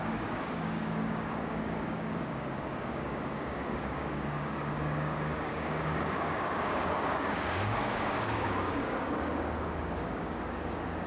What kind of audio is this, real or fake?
fake